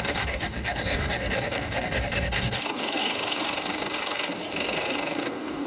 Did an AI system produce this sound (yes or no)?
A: yes